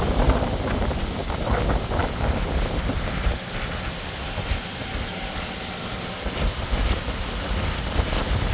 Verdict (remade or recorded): recorded